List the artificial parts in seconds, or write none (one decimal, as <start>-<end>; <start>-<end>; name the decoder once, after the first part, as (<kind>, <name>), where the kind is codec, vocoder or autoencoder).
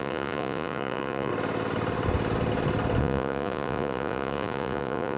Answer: 0.0-1.3 (vocoder, Vocos); 3.0-5.2